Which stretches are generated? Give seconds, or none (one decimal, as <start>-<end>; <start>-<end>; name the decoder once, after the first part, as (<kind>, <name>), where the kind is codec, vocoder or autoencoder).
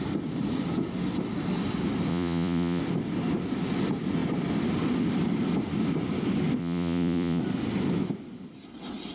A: 2.1-2.8 (vocoder, Vocos); 6.6-7.4